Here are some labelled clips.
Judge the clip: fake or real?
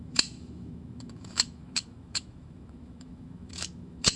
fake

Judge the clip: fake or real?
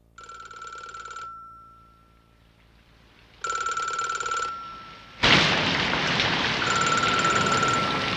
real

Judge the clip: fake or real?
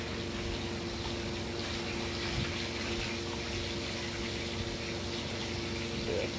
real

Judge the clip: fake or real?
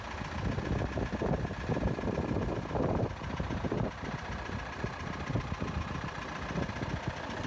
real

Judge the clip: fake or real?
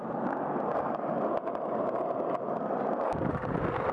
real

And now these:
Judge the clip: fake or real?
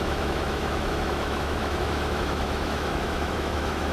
fake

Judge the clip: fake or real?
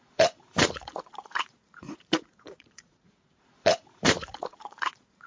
fake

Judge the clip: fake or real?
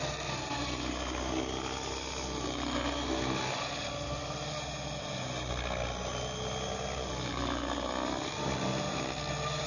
real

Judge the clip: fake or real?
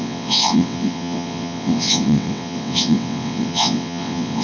fake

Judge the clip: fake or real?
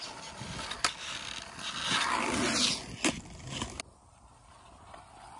real